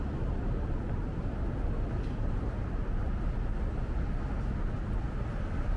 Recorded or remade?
recorded